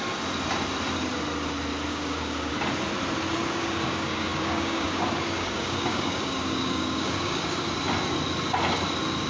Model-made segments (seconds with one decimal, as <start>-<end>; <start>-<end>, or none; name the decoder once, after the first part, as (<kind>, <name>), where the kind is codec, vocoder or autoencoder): 1.9-2.5 (codec, DAC); 3.4-7.7